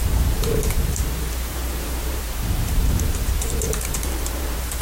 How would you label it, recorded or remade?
remade